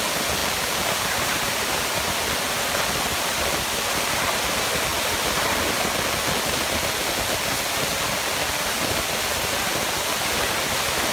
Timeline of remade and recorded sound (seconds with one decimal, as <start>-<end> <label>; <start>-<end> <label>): 0.0-11.1 recorded